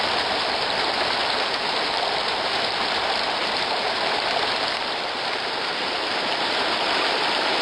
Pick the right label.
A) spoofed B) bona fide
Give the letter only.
A